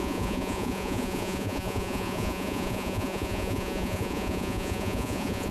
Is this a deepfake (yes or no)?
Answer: yes